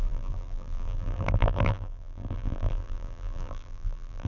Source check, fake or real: fake